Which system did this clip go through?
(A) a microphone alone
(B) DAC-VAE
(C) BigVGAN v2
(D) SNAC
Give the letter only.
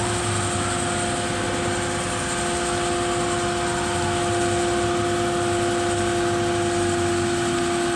A